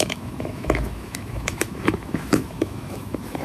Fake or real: fake